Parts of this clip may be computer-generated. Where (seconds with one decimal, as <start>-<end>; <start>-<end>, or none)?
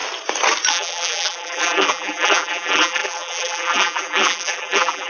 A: 0.7-5.1